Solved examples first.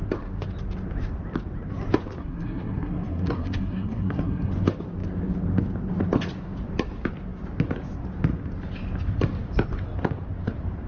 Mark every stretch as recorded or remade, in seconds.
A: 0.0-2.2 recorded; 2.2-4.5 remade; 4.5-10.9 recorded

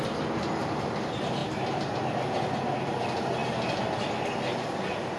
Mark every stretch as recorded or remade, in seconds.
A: 0.0-5.2 recorded